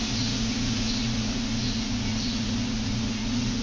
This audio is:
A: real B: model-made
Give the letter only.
B